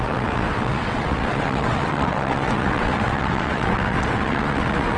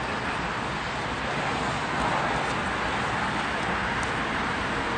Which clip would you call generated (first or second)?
first